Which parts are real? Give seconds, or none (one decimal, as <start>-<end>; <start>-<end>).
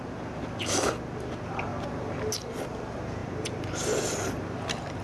0.0-5.0